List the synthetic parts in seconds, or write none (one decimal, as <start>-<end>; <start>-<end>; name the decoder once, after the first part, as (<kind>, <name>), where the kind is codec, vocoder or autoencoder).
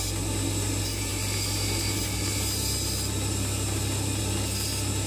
none